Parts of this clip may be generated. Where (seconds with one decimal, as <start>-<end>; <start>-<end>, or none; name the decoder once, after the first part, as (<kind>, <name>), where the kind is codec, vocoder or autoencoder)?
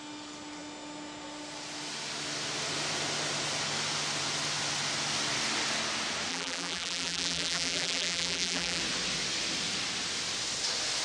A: 6.3-8.8 (vocoder, BigVGAN v2)